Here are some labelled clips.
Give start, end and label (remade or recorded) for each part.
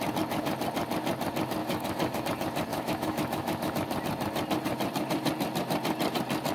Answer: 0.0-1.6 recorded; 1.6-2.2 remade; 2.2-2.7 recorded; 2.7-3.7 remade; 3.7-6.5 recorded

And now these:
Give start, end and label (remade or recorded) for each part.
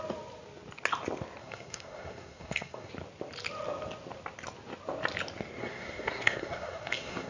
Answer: 0.0-1.4 recorded; 1.4-2.9 remade; 2.9-5.6 recorded; 5.6-7.3 remade